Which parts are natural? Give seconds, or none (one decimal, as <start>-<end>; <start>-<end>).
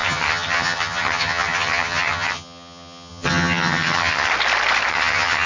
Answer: 4.3-4.9